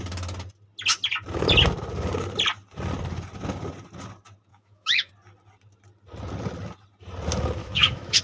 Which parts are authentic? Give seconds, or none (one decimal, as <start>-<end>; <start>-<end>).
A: 0.0-4.5; 5.1-7.6